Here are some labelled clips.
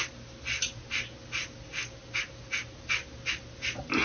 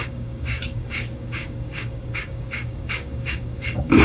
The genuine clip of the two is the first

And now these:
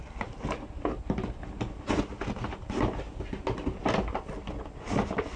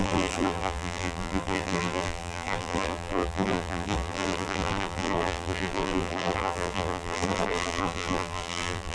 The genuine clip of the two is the first